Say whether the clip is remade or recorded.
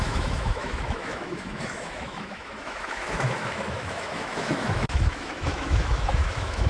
remade